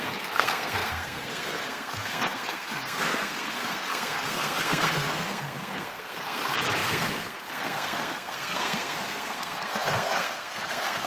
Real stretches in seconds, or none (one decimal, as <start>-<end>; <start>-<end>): none